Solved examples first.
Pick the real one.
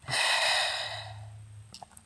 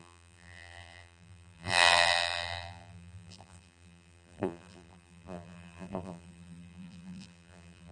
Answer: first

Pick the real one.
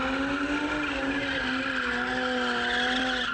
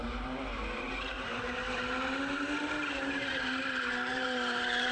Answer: first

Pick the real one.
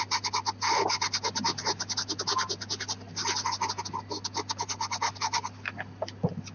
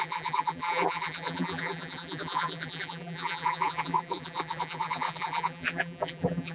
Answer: first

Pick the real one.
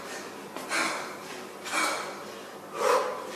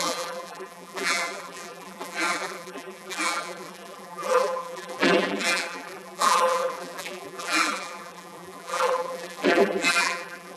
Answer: first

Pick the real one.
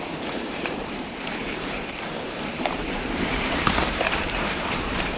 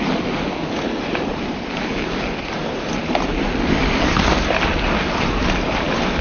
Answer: second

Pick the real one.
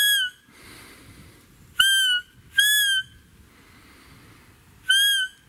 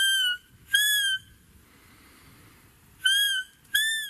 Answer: first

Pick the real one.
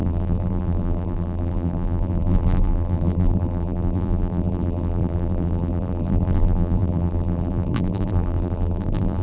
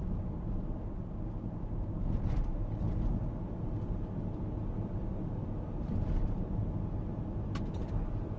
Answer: second